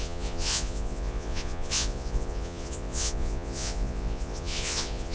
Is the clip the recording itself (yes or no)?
no